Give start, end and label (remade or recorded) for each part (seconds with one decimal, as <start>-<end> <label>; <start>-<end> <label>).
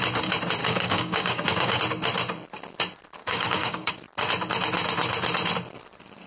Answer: 0.0-0.6 recorded; 0.6-1.8 remade; 1.8-3.2 recorded; 3.2-3.9 remade; 3.9-6.3 recorded